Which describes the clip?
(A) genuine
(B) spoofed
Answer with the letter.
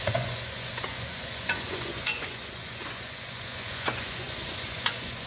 B